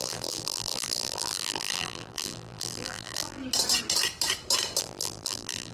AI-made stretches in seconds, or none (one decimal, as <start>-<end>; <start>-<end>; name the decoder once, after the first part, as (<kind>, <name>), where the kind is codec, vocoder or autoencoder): 0.0-3.4 (vocoder, BigVGAN v2); 4.8-5.7